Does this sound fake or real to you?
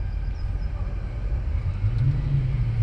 real